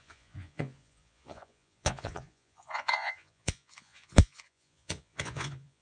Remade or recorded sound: remade